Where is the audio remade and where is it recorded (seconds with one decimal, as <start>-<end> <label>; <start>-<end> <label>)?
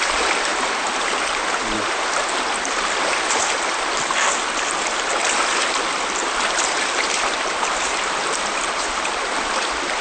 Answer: 0.0-10.0 recorded